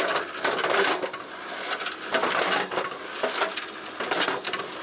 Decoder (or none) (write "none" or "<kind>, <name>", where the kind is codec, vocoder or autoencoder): none